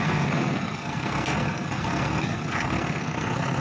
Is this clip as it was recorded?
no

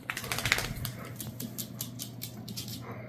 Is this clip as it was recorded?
yes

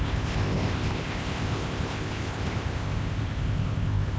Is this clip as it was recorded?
no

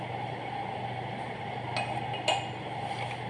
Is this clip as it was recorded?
yes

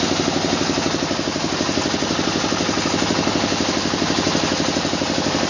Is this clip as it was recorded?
yes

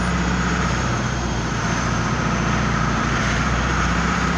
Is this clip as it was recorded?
no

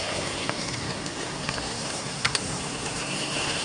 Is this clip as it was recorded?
no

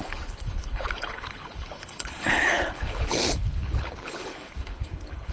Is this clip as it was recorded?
no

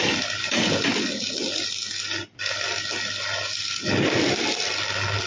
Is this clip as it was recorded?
yes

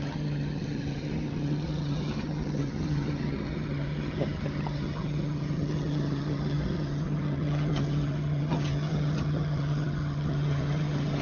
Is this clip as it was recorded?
no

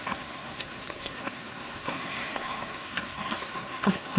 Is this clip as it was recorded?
no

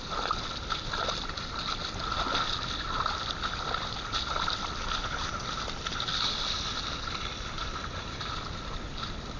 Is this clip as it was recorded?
yes